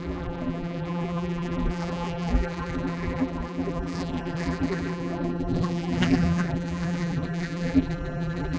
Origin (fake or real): fake